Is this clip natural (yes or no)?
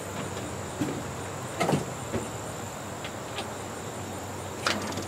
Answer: yes